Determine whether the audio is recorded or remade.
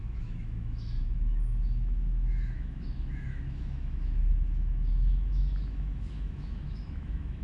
remade